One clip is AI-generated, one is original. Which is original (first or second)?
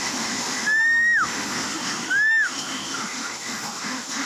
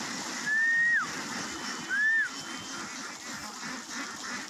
second